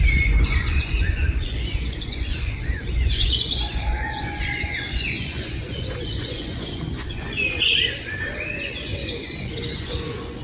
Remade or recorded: remade